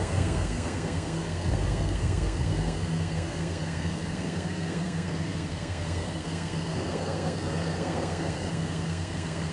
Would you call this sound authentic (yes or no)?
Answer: no